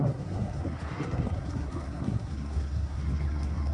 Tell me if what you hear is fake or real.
fake